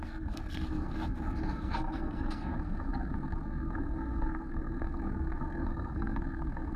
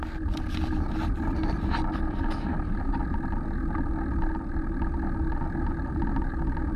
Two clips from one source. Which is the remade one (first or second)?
first